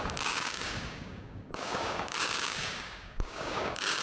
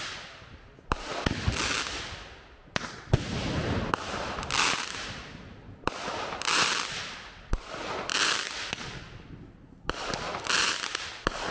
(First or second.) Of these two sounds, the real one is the second